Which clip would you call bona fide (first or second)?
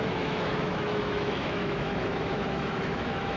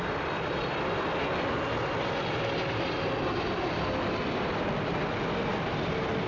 second